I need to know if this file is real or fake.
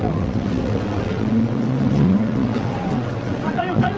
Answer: fake